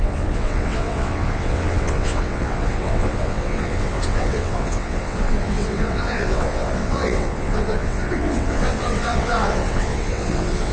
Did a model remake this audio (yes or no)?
yes